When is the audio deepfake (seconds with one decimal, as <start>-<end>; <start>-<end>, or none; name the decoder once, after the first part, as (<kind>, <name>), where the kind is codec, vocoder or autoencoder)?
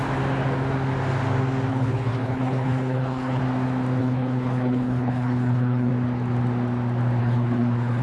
1.7-3.4 (codec, HILCodec); 4.0-5.9; 7.2-8.0